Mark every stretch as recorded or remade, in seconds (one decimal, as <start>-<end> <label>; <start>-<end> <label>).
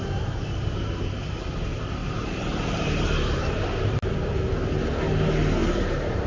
0.0-1.4 remade; 1.4-2.0 recorded; 2.0-3.8 remade; 3.8-5.6 recorded; 5.6-6.3 remade